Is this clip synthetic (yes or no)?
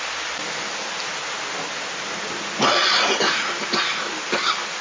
no